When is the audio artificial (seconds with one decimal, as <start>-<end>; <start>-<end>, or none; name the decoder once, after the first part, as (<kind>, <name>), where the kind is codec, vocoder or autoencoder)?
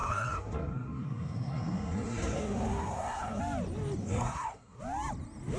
0.0-3.4 (codec, SNAC); 4.0-4.8